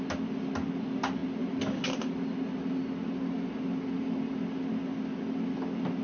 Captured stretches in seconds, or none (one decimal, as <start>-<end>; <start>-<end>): 0.0-6.0